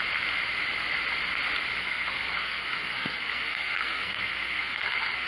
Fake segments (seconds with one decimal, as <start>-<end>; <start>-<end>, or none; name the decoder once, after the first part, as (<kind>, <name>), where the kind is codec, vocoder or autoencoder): 1.8-5.3 (codec, SNAC)